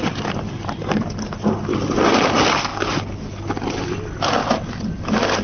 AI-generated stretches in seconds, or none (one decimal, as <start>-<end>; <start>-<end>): 2.7-3.8; 4.4-5.4